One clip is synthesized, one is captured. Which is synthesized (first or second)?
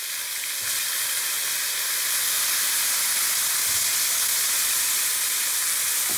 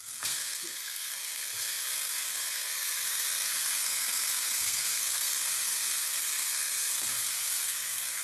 second